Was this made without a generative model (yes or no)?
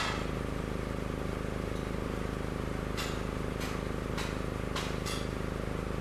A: yes